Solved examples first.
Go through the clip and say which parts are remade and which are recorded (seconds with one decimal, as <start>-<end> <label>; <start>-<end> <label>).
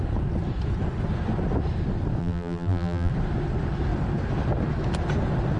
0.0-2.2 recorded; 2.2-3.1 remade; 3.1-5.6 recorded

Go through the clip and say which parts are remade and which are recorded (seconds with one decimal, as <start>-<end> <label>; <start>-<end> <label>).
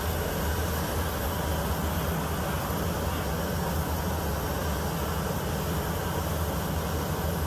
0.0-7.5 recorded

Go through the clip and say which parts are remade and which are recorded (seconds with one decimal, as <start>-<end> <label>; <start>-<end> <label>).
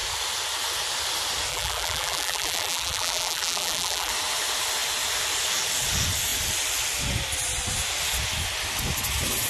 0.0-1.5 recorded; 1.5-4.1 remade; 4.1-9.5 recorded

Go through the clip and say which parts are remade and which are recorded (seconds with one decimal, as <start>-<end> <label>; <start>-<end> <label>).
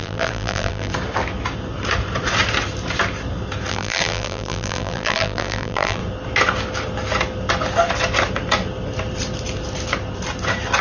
0.0-0.9 remade; 0.9-3.7 recorded; 3.7-6.0 remade; 6.0-10.8 recorded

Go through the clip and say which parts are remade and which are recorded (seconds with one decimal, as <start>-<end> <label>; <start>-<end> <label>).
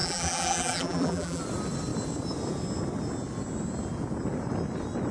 0.0-1.4 remade; 1.4-5.1 recorded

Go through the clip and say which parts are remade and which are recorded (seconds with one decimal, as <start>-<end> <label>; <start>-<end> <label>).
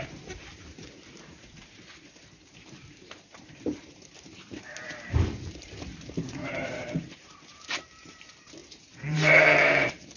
0.0-10.2 remade